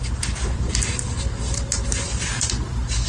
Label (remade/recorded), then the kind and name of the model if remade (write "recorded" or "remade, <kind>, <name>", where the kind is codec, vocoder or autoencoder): recorded